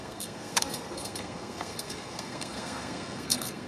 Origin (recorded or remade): remade